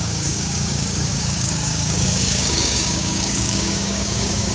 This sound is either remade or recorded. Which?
remade